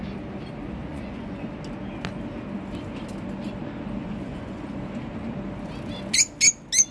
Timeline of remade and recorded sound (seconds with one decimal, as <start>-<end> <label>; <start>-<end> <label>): 0.0-0.9 recorded; 0.9-1.5 remade; 1.5-4.0 recorded; 4.0-4.8 remade; 4.8-6.9 recorded